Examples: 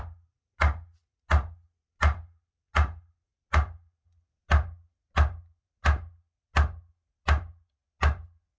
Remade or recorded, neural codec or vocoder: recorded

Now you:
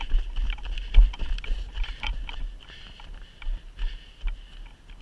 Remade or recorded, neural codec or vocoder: recorded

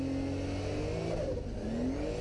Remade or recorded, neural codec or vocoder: recorded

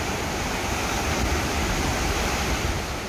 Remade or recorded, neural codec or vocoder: recorded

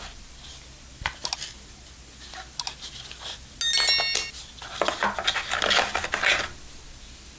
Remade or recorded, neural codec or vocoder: recorded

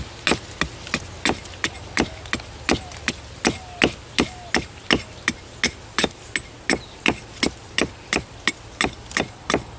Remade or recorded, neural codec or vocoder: recorded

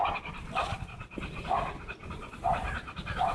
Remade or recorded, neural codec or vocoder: recorded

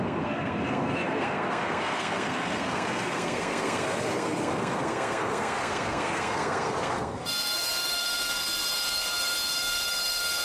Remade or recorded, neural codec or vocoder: remade, codec, SNAC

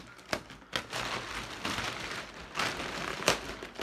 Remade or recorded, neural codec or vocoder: recorded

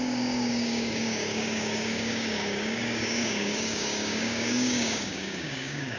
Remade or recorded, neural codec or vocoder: remade, codec, DAC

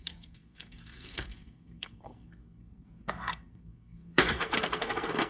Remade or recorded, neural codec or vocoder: remade, codec, SNAC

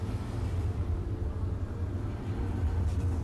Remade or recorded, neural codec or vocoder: recorded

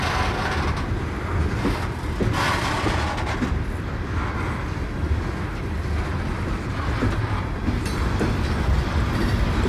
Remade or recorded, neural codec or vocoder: recorded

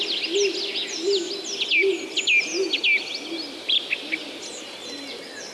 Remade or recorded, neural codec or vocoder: recorded